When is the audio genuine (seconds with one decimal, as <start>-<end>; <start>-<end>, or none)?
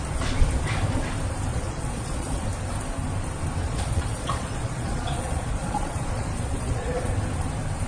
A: 0.0-1.5; 2.4-3.6; 7.1-7.9